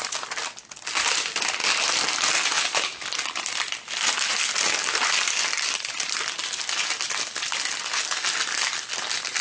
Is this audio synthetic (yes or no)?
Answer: no